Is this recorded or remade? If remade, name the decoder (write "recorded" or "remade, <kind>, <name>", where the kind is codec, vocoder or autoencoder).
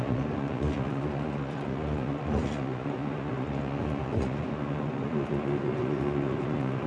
remade, vocoder, Vocos